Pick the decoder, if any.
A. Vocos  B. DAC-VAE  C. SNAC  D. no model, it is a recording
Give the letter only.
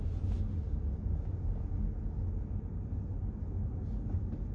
D